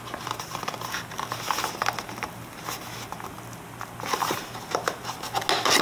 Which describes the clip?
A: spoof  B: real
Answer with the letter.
B